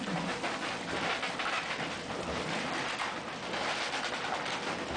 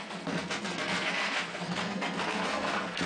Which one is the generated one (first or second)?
second